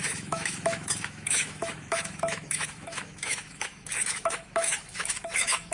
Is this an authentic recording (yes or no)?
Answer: no